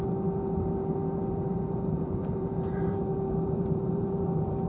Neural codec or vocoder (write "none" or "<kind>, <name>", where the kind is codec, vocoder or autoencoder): vocoder, BigVGAN v2